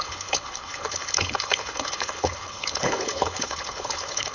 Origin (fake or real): fake